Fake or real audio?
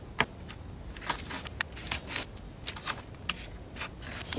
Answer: real